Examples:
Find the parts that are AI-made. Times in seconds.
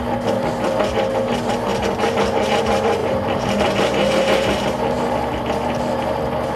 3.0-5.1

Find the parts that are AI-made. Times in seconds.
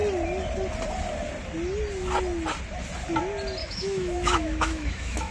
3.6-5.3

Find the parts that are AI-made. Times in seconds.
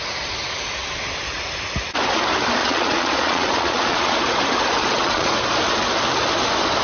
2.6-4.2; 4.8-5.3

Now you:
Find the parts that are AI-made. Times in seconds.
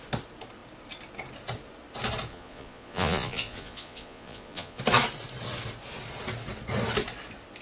2.3-4.8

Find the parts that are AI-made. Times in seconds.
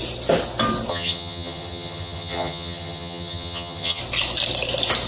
0.9-4.0